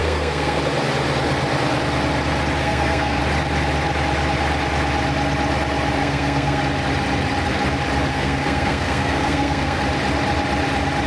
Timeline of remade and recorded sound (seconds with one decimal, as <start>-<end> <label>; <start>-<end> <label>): 0.0-0.6 remade; 0.6-2.6 recorded; 2.6-3.2 remade; 3.2-6.0 recorded; 6.0-6.6 remade; 6.6-8.1 recorded; 8.1-9.8 remade; 9.8-11.1 recorded